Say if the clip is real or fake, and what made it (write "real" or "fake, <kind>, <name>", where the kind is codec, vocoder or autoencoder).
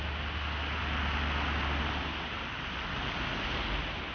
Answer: real